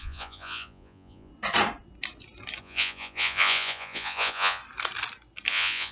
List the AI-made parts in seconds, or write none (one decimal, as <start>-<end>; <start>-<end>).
0.0-1.3; 2.6-4.6; 5.5-5.9